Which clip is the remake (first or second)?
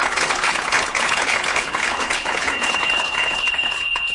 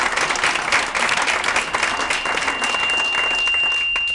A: first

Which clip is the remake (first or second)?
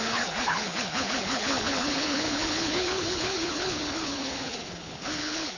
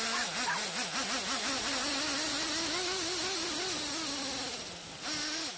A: first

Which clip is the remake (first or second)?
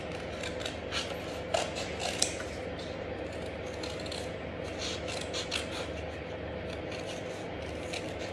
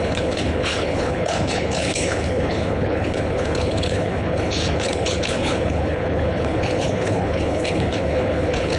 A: second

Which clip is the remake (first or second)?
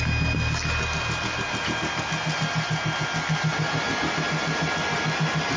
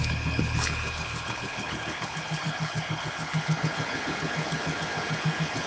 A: second